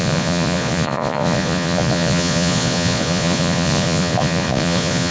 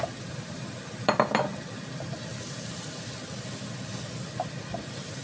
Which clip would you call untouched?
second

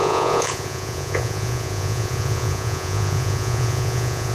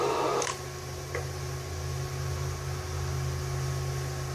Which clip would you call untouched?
second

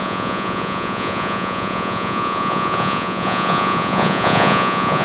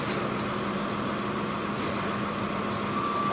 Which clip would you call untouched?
second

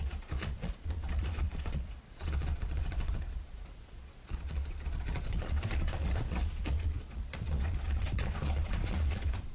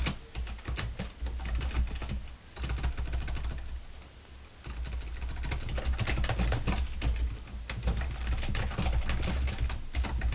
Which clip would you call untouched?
second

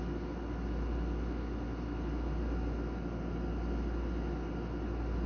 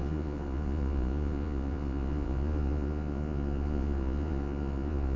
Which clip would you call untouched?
first